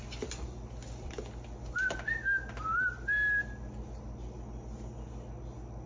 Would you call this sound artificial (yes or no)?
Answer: no